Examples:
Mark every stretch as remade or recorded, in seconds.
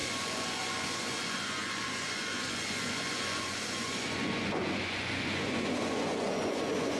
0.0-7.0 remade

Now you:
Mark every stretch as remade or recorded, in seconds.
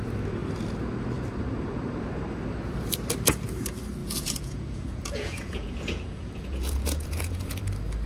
0.0-4.0 recorded; 4.0-7.6 remade; 7.6-8.1 recorded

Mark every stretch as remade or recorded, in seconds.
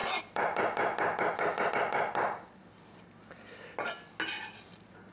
0.0-5.1 recorded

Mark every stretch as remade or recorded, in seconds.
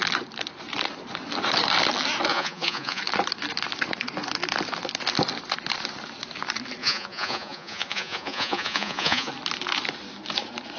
0.0-2.3 recorded; 2.3-3.0 remade; 3.0-6.8 recorded; 6.8-9.3 remade; 9.3-10.8 recorded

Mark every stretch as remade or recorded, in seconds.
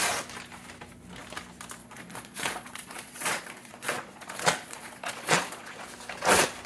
0.0-1.8 recorded; 1.8-5.8 remade; 5.8-6.7 recorded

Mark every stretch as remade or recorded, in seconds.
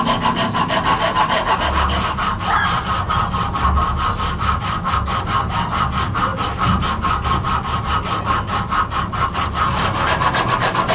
0.0-10.9 recorded